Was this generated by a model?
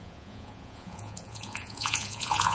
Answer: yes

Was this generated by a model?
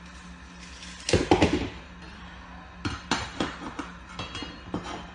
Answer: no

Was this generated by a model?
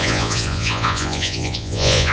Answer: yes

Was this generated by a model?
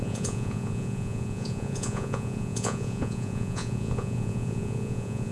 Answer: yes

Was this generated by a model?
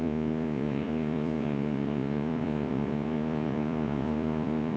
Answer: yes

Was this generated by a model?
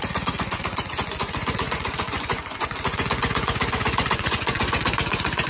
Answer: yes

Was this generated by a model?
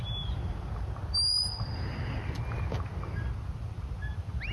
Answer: no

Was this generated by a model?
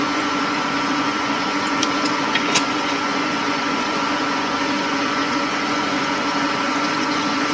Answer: yes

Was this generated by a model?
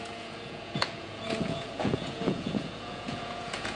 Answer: yes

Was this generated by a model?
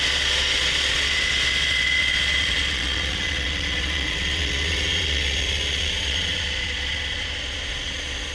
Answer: yes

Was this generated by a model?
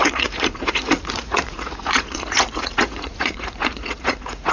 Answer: yes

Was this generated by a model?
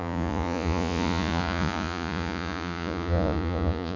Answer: yes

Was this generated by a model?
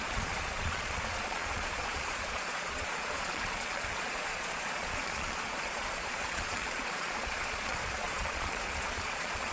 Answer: yes